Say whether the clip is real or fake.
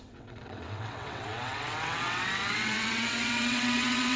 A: fake